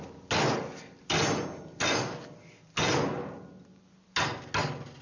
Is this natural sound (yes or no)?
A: yes